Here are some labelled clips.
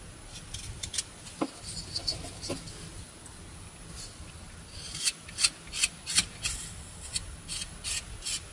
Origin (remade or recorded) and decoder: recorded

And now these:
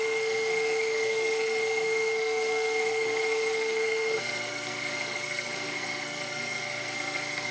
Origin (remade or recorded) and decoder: remade, codec, SNAC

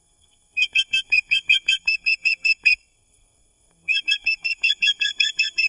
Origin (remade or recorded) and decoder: remade, codec, SNAC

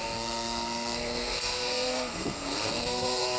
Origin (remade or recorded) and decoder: remade, codec, SNAC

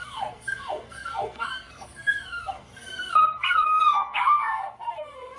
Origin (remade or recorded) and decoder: remade, codec, SNAC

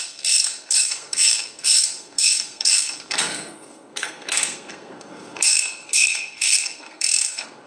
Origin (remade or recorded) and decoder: remade, codec, SNAC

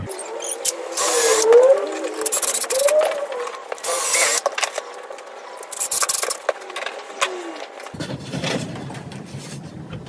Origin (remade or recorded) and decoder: recorded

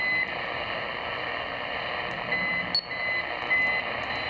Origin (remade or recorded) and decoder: recorded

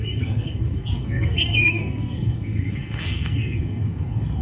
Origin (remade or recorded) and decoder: remade, codec, SNAC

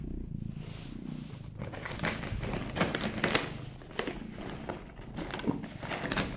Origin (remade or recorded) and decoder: recorded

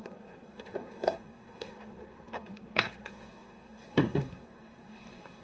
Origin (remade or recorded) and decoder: remade, codec, SNAC